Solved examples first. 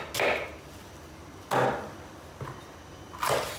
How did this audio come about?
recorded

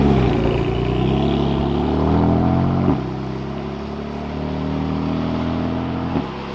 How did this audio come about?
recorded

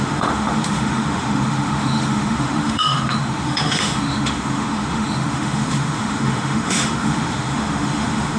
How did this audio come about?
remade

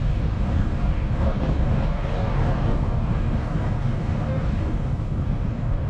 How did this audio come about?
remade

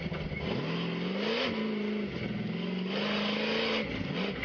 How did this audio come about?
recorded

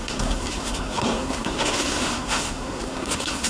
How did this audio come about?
remade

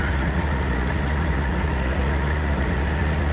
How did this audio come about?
remade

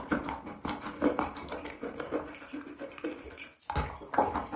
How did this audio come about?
recorded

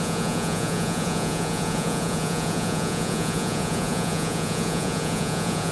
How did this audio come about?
remade